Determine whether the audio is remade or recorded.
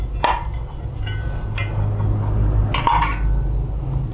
recorded